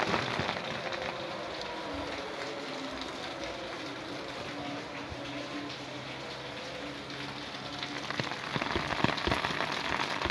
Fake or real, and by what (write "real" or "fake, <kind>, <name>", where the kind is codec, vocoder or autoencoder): real